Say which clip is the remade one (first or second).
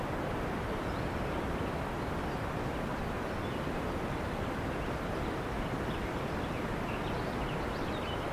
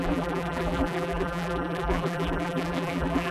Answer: second